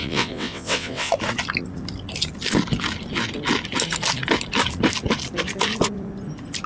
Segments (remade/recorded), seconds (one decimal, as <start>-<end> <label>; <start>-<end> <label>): 0.0-1.1 remade; 1.1-6.7 recorded

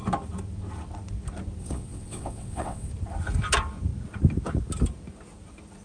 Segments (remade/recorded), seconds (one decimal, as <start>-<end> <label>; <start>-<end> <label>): 0.0-1.6 recorded; 1.6-2.9 remade; 2.9-5.8 recorded